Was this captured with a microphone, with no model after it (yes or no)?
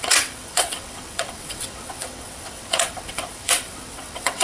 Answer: no